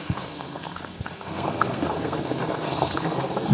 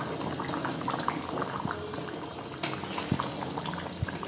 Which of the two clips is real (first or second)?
second